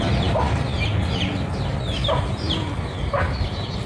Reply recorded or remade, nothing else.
recorded